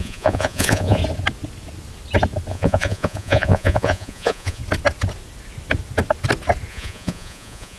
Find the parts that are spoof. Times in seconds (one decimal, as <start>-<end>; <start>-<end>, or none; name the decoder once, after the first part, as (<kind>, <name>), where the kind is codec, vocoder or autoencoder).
0.0-1.0 (vocoder, Vocos); 2.5-4.6; 6.7-7.8